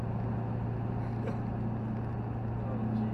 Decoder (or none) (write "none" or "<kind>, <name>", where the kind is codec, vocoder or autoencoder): none